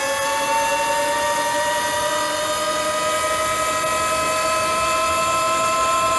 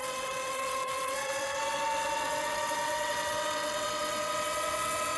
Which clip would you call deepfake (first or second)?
second